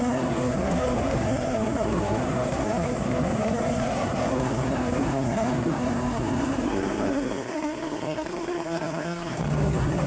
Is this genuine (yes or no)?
no